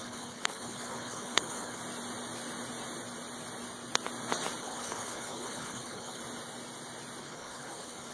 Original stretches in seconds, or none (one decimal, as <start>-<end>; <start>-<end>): 1.8-4.6; 6.2-7.2